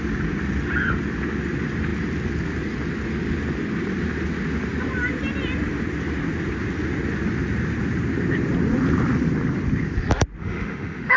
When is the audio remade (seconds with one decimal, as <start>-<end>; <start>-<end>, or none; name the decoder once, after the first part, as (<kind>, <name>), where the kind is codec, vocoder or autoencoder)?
10.4-11.2 (autoencoder, DAC-VAE)

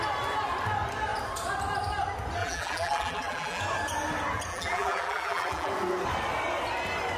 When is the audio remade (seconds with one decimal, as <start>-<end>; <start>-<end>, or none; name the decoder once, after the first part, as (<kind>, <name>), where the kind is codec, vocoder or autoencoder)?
2.4-3.6 (vocoder, BigVGAN v2); 4.5-5.7

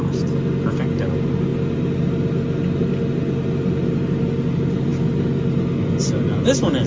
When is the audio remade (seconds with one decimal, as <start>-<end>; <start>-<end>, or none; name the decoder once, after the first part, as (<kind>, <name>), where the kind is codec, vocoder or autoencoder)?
none

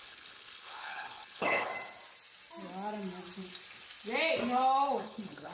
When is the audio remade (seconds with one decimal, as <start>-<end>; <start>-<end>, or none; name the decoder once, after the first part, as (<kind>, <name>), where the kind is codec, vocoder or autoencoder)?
0.0-1.7 (codec, HILCodec); 5.0-5.5

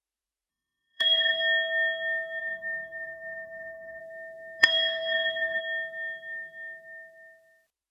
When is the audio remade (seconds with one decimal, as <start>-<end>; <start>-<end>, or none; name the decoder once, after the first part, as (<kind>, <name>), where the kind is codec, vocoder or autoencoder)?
0.5-1.4 (codec, SNAC); 2.4-4.0; 4.6-5.6

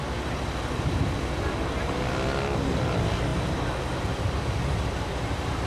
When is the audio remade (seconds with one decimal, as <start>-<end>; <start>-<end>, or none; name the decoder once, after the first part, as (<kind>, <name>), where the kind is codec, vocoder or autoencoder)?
none